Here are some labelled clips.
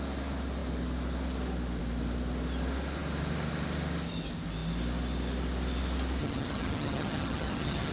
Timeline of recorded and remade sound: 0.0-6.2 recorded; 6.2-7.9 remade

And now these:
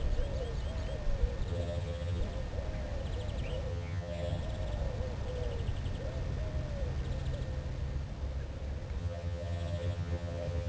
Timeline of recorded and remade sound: 0.0-1.5 recorded; 1.5-2.2 remade; 2.2-3.7 recorded; 3.7-4.4 remade; 4.4-9.0 recorded; 9.0-10.7 remade

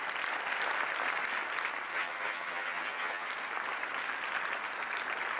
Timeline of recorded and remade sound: 0.0-1.9 recorded; 1.9-3.3 remade; 3.3-5.4 recorded

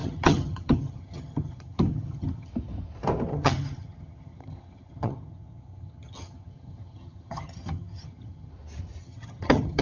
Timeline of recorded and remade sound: 0.0-2.5 remade; 2.5-3.3 recorded; 3.3-8.5 remade; 8.5-9.0 recorded; 9.0-9.8 remade

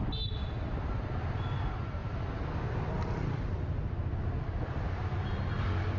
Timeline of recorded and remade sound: 0.0-6.0 recorded

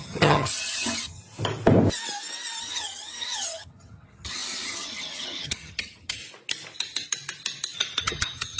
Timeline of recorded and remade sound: 0.0-1.2 remade; 1.2-2.6 recorded; 2.6-6.2 remade; 6.2-8.0 recorded; 8.0-8.6 remade

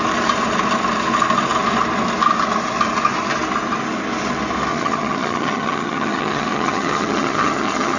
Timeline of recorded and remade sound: 0.0-4.7 recorded; 4.7-8.0 remade

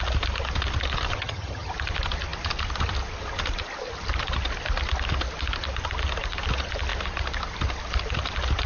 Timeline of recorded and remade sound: 0.0-1.1 recorded; 1.1-1.7 remade; 1.7-8.7 recorded